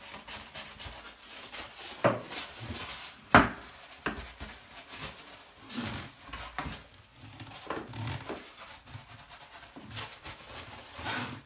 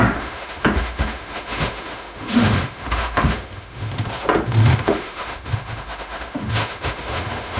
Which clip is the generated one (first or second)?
second